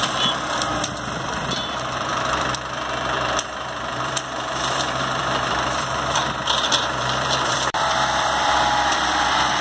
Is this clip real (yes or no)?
no